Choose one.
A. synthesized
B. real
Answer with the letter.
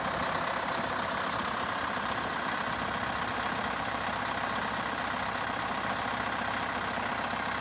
B